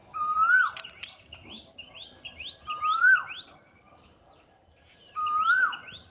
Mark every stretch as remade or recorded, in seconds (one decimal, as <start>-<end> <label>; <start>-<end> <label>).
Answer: 0.0-0.7 recorded; 0.7-6.1 remade